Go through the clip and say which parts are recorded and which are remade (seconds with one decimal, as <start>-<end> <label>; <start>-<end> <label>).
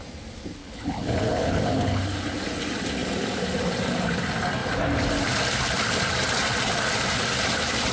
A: 0.0-0.6 recorded; 0.6-2.0 remade; 2.0-7.9 recorded